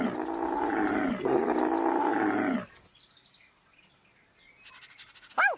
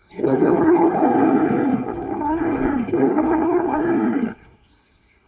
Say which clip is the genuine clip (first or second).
first